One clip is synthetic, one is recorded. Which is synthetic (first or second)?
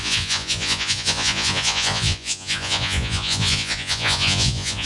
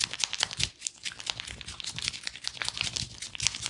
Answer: first